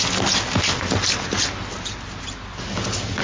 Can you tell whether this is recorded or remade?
recorded